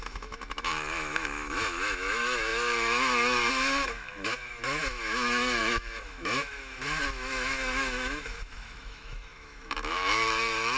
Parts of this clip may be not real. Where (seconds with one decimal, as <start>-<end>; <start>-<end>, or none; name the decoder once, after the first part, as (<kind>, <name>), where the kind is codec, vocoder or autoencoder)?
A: 0.0-10.8 (autoencoder, DAC-VAE)